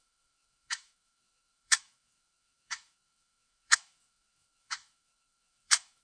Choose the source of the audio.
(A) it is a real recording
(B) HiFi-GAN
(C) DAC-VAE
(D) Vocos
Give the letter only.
C